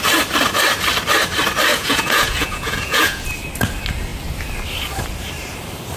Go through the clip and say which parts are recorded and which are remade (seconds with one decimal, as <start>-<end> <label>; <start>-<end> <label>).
0.0-1.7 recorded; 1.7-3.2 remade; 3.2-6.0 recorded